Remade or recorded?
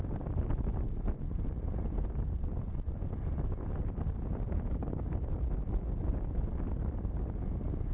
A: recorded